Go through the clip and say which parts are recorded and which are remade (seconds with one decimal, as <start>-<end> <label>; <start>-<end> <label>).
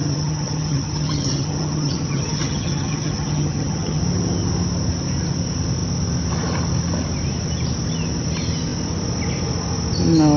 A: 0.0-4.0 remade; 4.0-10.4 recorded